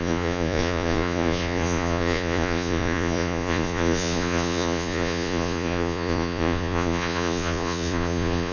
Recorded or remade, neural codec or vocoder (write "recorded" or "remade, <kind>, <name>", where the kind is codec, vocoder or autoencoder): remade, vocoder, Vocos